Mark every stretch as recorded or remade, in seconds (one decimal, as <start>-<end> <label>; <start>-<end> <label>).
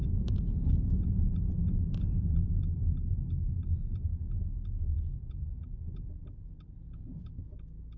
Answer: 0.0-2.6 remade; 2.6-4.1 recorded; 4.1-6.2 remade; 6.2-8.0 recorded